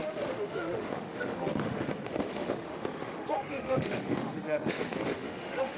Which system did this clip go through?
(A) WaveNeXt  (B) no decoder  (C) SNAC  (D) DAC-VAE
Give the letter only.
D